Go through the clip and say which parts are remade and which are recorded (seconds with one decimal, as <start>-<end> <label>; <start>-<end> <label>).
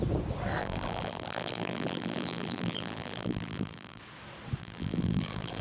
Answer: 0.0-0.6 recorded; 0.6-4.0 remade; 4.0-4.6 recorded; 4.6-5.6 remade